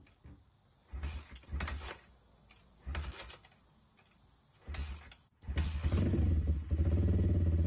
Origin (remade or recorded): recorded